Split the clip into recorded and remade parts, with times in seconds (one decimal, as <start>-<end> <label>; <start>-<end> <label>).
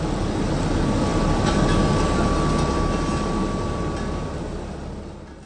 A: 0.0-5.5 recorded